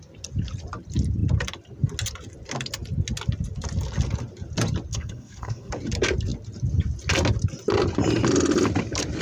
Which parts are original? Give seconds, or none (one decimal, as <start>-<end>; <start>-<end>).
0.0-4.9; 5.7-9.2